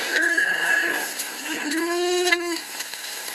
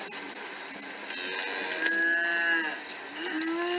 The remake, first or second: first